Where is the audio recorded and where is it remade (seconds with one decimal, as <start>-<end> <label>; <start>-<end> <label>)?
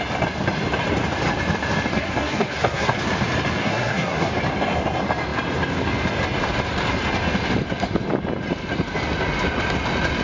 0.0-1.9 recorded; 1.9-3.0 remade; 3.0-3.6 recorded; 3.6-4.3 remade; 4.3-10.2 recorded